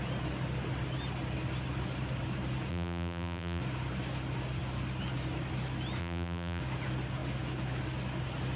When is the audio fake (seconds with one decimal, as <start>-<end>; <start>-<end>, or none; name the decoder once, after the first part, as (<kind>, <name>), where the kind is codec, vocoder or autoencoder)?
2.7-3.6 (vocoder, BigVGAN v2); 6.0-6.6